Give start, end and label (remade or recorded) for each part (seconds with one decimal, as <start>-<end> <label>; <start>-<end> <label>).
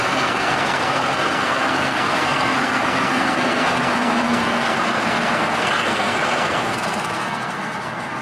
0.0-8.2 remade